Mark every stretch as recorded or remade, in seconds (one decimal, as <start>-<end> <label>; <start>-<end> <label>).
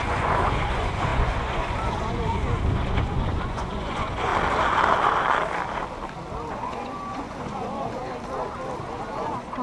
0.0-4.3 remade; 4.3-6.5 recorded; 6.5-8.0 remade; 8.0-8.8 recorded; 8.8-9.6 remade